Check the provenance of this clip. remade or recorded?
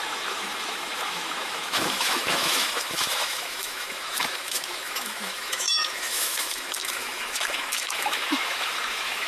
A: remade